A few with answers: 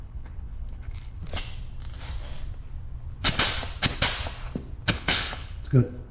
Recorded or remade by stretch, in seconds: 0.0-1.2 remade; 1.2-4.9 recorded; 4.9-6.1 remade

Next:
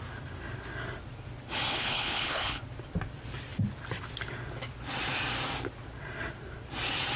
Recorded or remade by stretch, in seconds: 0.0-1.7 recorded; 1.7-2.6 remade; 2.6-7.2 recorded

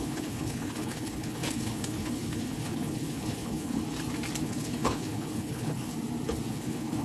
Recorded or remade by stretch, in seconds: 0.0-3.8 remade; 3.8-4.4 recorded; 4.4-5.9 remade; 5.9-6.5 recorded; 6.5-7.0 remade

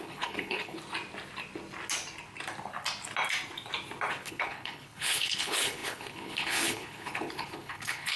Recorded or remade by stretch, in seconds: 0.0-0.8 remade; 0.8-4.1 recorded; 4.1-8.2 remade

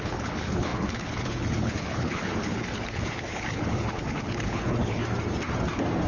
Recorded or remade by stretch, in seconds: 0.0-5.0 remade; 5.0-6.1 recorded

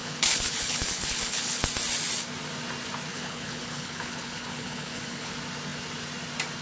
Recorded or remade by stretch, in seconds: 0.0-1.6 remade; 1.6-3.1 recorded; 3.1-5.3 remade; 5.3-6.6 recorded